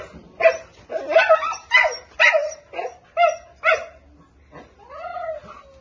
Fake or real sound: real